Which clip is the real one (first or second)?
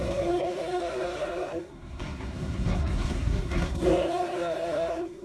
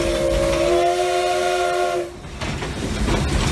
second